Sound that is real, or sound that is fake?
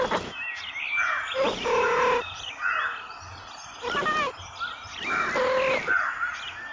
real